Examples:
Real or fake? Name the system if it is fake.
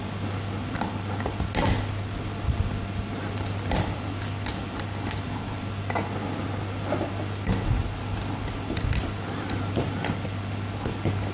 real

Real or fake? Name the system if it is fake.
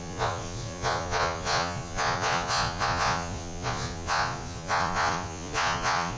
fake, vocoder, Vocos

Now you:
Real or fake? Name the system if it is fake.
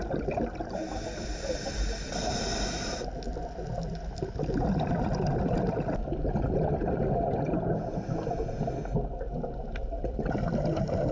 real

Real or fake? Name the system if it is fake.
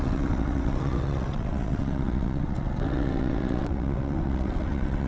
fake, vocoder, WaveNeXt